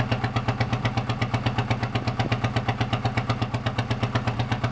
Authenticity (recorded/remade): recorded